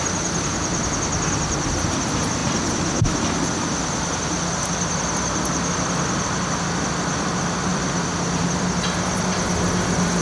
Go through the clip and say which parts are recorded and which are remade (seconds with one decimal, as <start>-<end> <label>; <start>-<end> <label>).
0.0-10.2 recorded